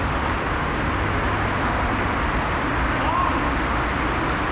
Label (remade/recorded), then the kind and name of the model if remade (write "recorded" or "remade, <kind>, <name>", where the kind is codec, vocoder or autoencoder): recorded